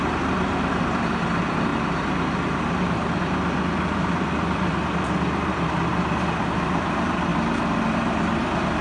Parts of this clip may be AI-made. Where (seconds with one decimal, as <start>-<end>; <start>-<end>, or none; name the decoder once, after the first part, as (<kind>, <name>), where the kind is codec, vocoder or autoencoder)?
0.0-1.7 (vocoder, BigVGAN v2); 3.2-5.9; 6.4-8.8